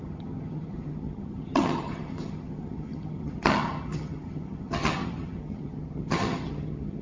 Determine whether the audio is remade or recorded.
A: remade